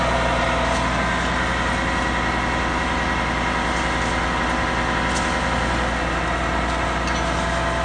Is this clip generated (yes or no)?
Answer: no